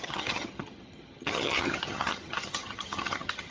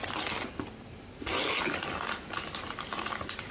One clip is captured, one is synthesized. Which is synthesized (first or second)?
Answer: first